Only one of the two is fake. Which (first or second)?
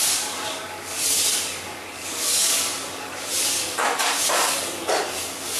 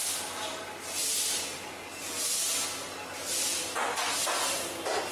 first